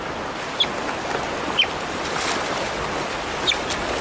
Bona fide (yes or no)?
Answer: yes